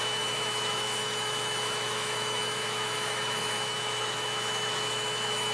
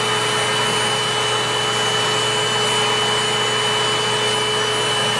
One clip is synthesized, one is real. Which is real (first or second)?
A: second